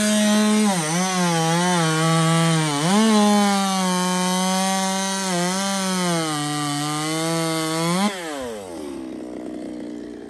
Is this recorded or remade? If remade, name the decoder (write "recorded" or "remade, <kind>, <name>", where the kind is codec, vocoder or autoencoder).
recorded